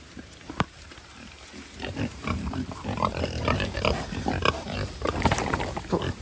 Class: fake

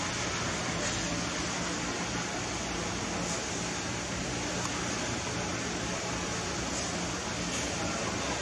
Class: real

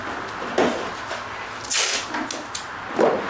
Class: real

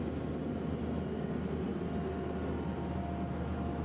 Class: real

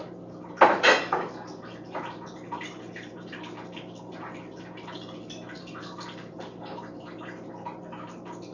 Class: real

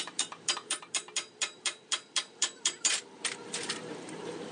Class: fake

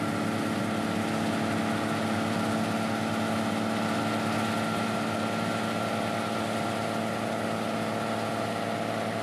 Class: real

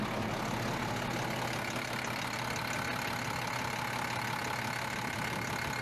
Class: real